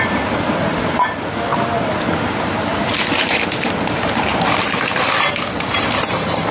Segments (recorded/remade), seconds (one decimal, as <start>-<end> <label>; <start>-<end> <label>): 0.0-2.7 remade; 2.7-3.2 recorded; 3.2-4.3 remade; 4.3-5.2 recorded; 5.2-6.5 remade